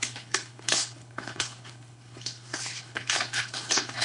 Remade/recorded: remade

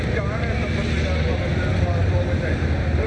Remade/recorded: recorded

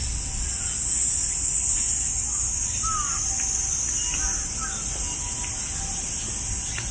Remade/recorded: recorded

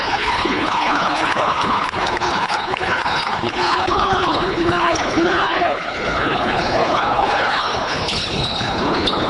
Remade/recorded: remade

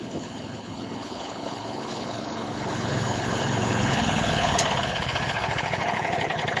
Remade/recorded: remade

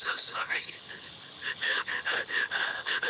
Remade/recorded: remade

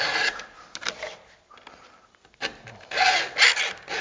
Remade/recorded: recorded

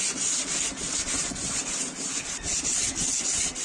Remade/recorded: recorded